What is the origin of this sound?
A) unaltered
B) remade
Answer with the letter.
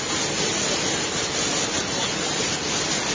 A